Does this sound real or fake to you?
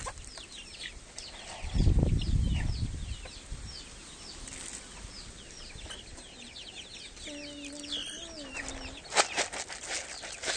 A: real